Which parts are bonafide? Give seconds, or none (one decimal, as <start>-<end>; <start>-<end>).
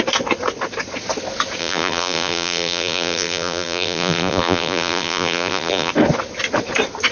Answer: 0.0-1.6; 5.9-7.1